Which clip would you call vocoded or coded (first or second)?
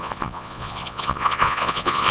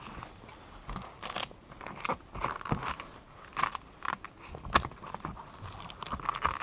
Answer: first